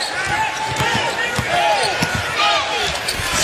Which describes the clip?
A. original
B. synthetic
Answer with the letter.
A